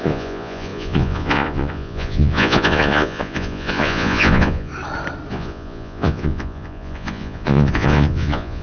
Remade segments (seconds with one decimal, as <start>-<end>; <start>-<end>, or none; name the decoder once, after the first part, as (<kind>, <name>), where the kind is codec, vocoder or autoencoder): 0.0-4.7 (vocoder, Vocos); 5.3-8.6